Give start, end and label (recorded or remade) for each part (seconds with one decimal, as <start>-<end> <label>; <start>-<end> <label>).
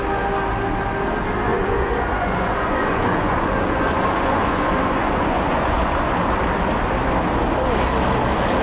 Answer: 0.0-1.5 recorded; 1.5-6.1 remade; 6.1-8.6 recorded